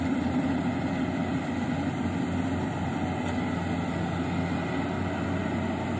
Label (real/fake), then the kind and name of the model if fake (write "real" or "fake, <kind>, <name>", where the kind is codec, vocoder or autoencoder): real